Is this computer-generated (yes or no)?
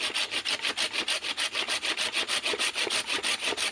no